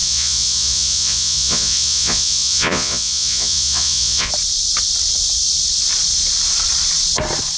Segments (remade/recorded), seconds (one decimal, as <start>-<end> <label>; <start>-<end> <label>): 0.0-4.3 remade; 4.3-7.6 recorded